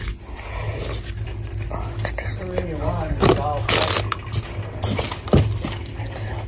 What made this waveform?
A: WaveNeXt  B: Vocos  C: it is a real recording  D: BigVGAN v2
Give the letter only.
C